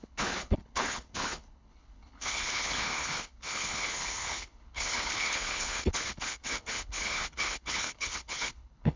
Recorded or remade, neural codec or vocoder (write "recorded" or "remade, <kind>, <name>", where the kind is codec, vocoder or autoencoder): remade, codec, HILCodec